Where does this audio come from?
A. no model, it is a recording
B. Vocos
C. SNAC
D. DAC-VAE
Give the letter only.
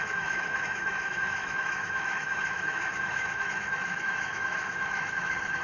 D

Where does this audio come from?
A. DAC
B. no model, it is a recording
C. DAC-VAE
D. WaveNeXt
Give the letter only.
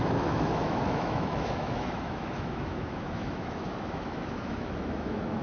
C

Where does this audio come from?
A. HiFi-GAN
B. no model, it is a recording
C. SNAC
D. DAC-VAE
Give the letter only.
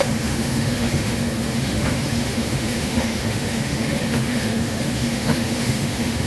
D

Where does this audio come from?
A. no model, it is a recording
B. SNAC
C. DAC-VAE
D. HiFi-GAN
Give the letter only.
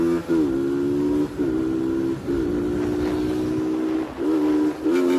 A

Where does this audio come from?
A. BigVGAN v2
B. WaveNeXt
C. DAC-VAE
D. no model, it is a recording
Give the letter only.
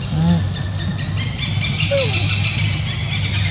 D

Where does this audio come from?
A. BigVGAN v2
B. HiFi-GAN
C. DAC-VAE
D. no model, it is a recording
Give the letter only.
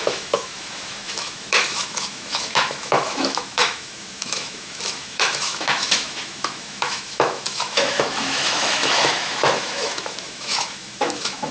C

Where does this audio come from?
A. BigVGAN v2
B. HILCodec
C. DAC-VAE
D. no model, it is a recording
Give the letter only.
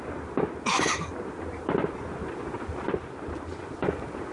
D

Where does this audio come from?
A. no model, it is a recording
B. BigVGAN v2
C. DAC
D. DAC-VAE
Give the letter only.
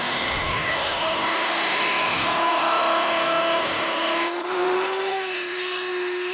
D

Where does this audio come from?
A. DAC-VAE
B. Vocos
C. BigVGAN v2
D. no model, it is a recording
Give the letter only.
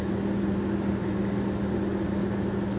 D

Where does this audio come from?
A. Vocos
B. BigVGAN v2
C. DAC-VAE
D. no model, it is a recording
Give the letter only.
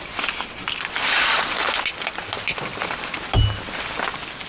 D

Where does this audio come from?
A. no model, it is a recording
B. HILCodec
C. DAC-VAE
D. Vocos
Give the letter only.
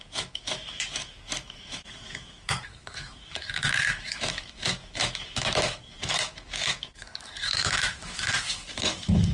C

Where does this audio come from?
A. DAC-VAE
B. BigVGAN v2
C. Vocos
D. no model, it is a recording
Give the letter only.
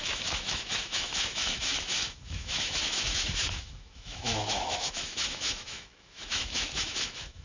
A